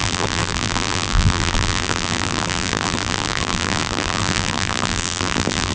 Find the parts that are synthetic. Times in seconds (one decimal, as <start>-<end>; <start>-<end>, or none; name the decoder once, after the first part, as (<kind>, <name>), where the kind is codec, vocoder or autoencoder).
0.0-5.7 (vocoder, BigVGAN v2)